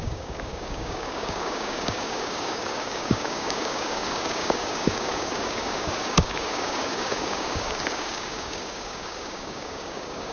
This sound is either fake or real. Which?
fake